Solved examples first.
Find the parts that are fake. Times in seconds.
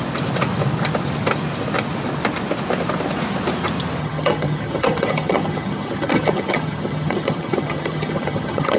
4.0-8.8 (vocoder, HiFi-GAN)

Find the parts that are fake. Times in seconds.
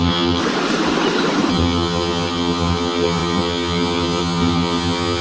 0.0-0.4 (vocoder, HiFi-GAN); 1.5-5.2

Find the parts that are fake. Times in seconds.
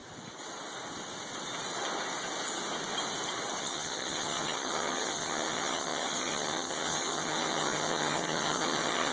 3.6-9.1 (vocoder, HiFi-GAN)